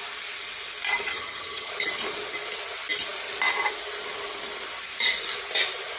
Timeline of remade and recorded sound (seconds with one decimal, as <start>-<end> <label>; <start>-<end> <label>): 0.0-1.1 recorded; 1.1-1.7 remade; 1.7-6.0 recorded

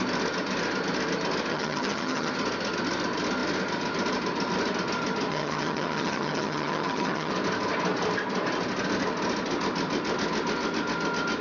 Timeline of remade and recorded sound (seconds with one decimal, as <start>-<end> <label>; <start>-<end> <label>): 0.0-1.5 recorded; 1.5-2.3 remade; 2.3-5.3 recorded; 5.3-7.3 remade; 7.3-11.4 recorded